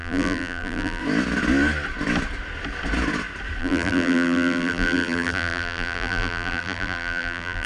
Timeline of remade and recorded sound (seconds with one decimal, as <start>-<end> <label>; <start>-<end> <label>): 0.0-1.0 remade; 1.0-3.6 recorded; 3.6-7.7 remade